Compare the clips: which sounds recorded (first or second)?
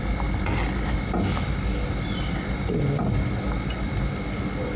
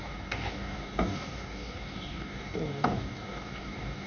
first